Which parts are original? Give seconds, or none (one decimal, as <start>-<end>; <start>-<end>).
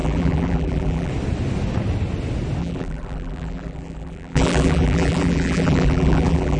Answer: 1.1-2.6